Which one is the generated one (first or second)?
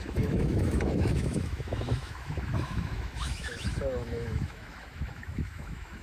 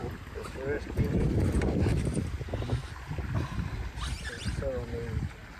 first